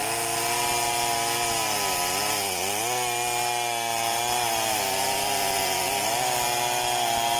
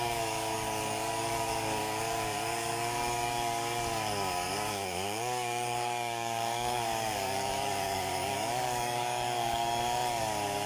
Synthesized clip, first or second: second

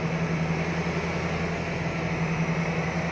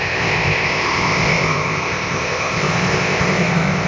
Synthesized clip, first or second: second